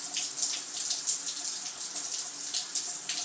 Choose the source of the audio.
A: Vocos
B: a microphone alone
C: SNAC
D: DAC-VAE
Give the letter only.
B